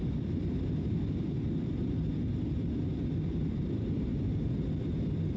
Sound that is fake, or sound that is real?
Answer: fake